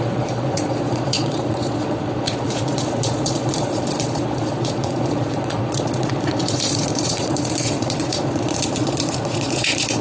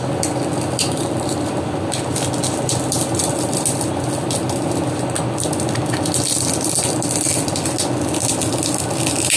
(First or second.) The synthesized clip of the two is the first